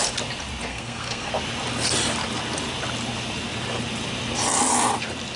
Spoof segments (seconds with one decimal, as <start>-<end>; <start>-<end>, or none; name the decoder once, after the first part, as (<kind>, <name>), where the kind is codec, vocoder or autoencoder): 0.7-1.3 (codec, SNAC)